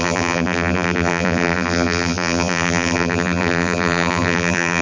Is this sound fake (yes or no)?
yes